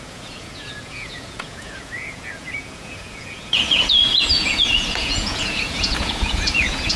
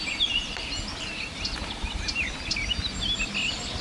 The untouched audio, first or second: second